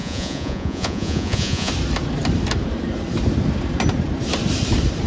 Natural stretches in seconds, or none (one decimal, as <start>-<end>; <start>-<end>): 1.7-5.1